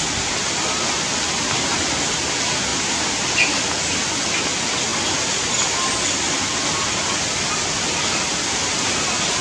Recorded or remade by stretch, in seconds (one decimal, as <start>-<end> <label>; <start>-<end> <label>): 0.0-2.7 recorded; 2.7-3.6 remade; 3.6-9.4 recorded